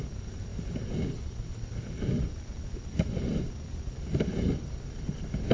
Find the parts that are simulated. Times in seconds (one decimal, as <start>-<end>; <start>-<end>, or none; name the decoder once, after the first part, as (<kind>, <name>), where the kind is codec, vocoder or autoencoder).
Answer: none